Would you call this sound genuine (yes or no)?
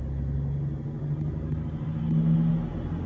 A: yes